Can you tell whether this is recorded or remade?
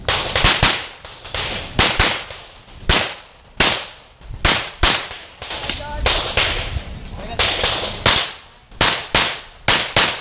recorded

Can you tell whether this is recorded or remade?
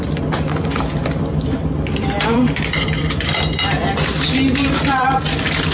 remade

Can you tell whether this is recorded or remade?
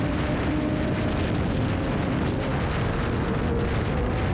recorded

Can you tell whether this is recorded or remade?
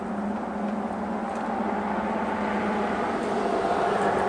recorded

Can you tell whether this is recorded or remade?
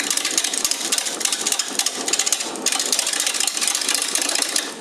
recorded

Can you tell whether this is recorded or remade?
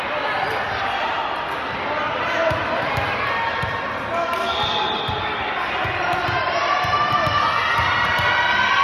recorded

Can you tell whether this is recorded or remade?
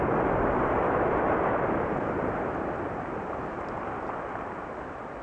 recorded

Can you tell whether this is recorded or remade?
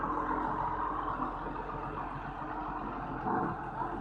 recorded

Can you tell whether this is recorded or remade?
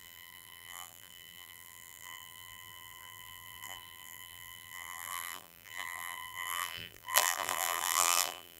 remade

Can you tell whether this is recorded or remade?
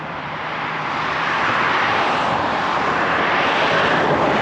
remade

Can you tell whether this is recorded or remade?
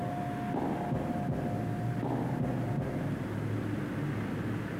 recorded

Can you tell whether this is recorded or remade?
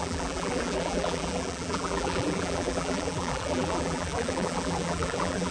remade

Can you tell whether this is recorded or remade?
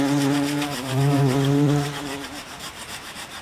remade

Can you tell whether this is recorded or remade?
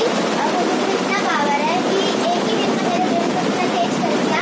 recorded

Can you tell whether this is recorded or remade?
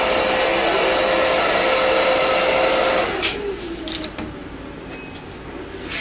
recorded